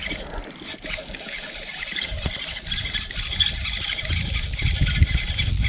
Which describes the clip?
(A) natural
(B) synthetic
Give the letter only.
A